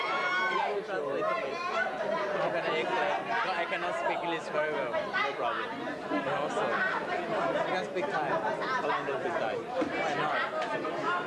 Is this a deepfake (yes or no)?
no